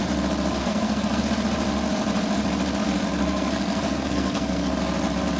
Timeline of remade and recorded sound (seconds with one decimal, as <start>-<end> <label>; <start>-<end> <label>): 0.0-0.6 recorded; 0.6-1.2 remade; 1.2-3.2 recorded; 3.2-4.7 remade; 4.7-5.4 recorded